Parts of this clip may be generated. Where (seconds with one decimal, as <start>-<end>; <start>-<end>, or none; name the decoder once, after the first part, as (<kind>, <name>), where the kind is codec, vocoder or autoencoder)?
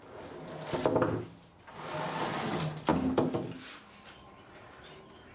none